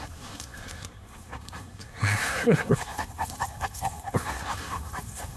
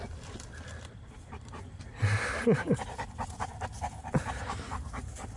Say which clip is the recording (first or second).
second